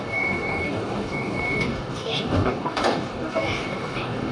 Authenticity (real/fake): fake